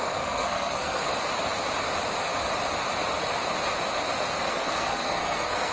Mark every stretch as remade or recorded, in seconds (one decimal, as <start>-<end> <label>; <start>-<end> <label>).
0.0-1.1 remade; 1.1-4.5 recorded; 4.5-5.7 remade